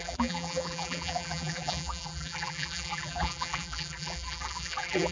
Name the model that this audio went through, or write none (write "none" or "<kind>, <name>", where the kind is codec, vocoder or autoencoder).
vocoder, BigVGAN v2